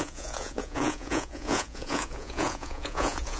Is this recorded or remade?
remade